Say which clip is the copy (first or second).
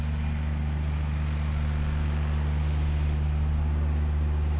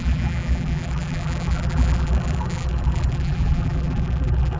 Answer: second